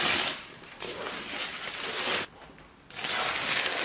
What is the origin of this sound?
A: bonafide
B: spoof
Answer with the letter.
A